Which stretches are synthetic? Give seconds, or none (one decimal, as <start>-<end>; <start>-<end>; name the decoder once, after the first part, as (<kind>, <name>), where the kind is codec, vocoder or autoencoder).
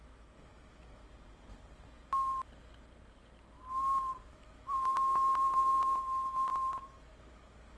0.0-1.0 (autoencoder, DAC-VAE); 4.3-6.5; 7.2-7.8